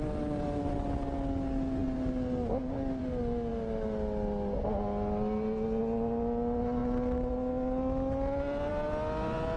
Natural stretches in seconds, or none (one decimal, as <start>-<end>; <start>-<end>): 0.0-9.6